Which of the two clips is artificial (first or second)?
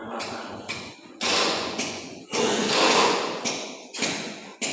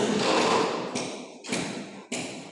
first